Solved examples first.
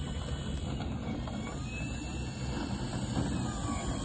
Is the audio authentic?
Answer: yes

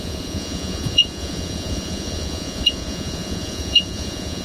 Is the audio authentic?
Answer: no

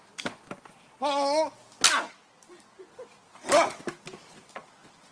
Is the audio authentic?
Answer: yes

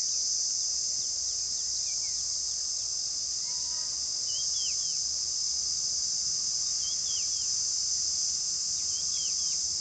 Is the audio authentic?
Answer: yes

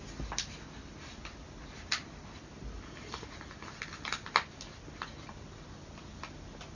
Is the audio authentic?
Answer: yes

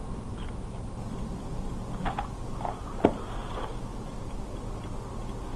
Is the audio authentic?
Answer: yes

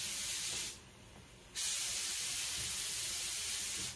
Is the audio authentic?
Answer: yes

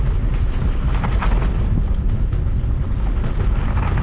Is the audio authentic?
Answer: yes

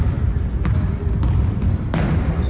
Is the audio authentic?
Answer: yes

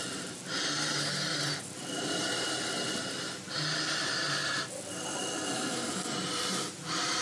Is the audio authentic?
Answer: yes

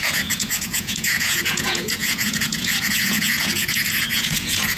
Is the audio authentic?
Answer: no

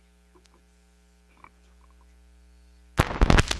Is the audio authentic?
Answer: yes